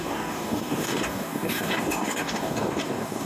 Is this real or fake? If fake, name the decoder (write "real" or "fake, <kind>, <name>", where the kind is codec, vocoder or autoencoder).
fake, codec, DAC